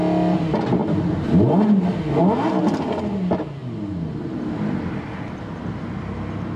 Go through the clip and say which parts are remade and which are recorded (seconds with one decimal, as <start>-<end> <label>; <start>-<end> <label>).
0.0-6.6 recorded